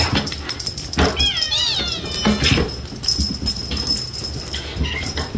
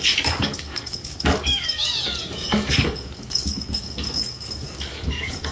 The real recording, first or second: first